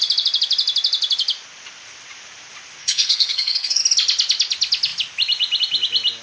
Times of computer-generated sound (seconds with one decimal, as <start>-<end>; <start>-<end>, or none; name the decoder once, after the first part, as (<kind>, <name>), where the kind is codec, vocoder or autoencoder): 2.8-3.8 (codec, SNAC)